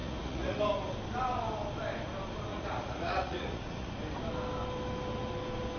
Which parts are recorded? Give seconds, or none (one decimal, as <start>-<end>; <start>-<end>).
0.6-2.5; 3.9-5.8